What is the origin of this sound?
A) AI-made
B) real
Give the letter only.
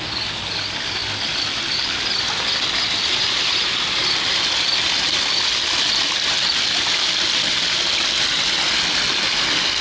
B